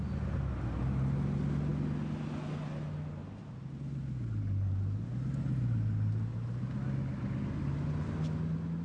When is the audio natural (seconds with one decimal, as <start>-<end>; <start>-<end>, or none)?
0.0-8.8

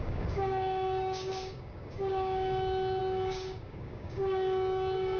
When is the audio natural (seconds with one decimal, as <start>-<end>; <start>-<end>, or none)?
none

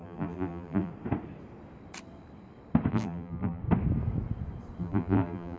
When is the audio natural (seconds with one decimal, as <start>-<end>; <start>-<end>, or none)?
0.9-2.9; 3.6-4.8

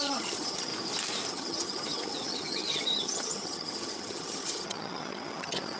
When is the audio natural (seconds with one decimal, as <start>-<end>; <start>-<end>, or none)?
0.7-1.3

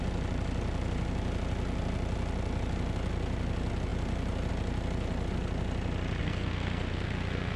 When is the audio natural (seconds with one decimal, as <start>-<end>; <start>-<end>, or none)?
0.0-6.2

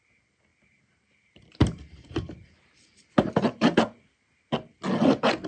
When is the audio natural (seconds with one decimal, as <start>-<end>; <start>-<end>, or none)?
0.0-0.5; 3.8-5.5

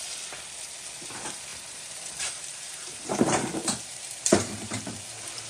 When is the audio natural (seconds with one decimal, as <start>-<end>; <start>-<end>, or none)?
0.0-1.5; 4.8-5.5

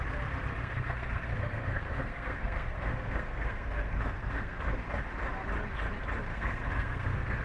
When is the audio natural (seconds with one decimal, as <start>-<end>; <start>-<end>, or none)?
0.0-0.6; 5.0-6.3